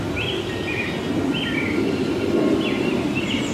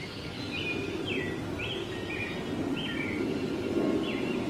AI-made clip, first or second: first